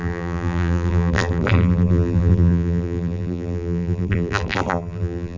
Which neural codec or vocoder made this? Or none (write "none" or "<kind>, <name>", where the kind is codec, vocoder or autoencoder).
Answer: vocoder, BigVGAN v2